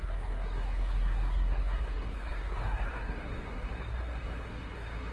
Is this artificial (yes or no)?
yes